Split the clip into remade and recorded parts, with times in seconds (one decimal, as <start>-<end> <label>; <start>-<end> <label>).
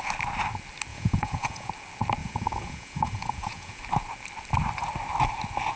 0.0-0.9 recorded; 0.9-1.7 remade; 1.7-2.2 recorded; 2.2-3.8 remade; 3.8-5.8 recorded